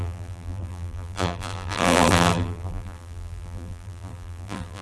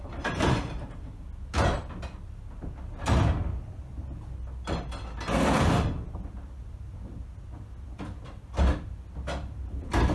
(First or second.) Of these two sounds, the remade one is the first